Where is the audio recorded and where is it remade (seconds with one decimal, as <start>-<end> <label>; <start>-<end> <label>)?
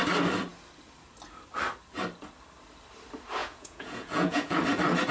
0.0-3.4 recorded; 3.4-4.6 remade; 4.6-5.1 recorded